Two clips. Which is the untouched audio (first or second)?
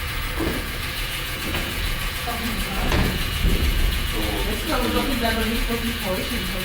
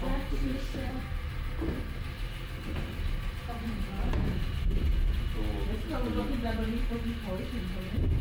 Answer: second